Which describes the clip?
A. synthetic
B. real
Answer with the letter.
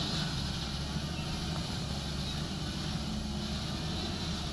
B